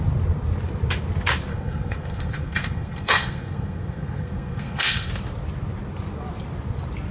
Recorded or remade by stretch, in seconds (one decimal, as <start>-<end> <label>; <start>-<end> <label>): 0.0-1.5 recorded; 1.5-5.1 remade; 5.1-7.1 recorded